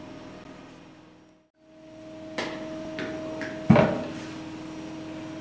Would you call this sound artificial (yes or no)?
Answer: no